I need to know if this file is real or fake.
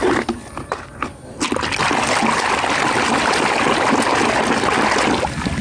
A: real